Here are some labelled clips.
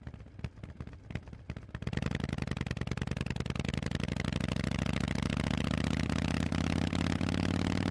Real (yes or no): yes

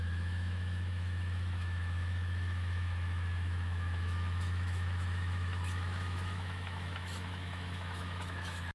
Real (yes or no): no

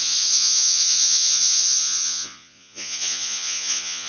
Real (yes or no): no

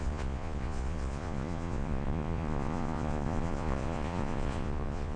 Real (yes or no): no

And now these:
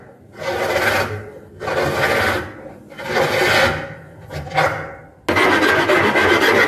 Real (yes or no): yes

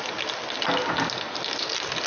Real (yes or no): yes